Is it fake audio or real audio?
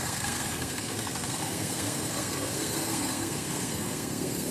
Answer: fake